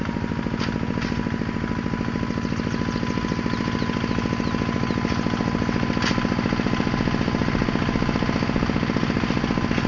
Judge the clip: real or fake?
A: real